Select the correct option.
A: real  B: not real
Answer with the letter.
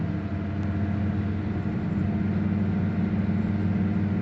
A